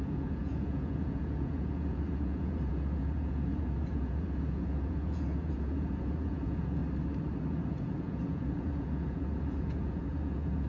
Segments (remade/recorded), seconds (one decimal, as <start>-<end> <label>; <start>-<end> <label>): 0.0-6.8 remade; 6.8-7.5 recorded; 7.5-10.7 remade

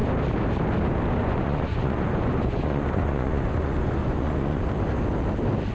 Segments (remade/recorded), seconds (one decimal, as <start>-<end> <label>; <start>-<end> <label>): 0.0-1.2 recorded; 1.2-4.6 remade; 4.6-5.7 recorded

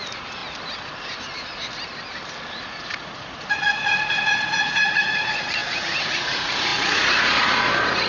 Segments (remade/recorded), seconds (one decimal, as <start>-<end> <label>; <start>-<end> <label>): 0.0-0.4 remade; 0.4-2.6 recorded; 2.6-8.1 remade

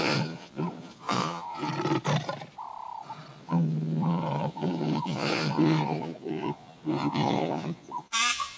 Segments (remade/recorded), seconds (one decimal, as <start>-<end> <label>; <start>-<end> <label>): 0.0-1.7 remade; 1.7-3.3 recorded; 3.3-8.6 remade

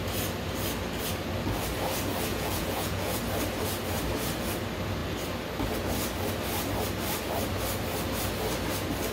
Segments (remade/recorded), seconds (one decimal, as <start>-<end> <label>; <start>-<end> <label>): 0.0-2.3 recorded; 2.3-3.2 remade; 3.2-9.1 recorded

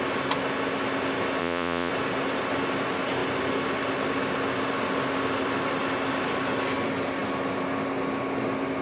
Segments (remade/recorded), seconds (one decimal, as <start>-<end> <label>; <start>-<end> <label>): 0.0-1.4 recorded; 1.4-1.9 remade; 1.9-8.8 recorded